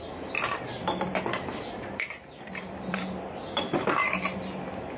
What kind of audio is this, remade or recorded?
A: recorded